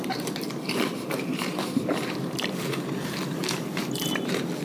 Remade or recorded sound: remade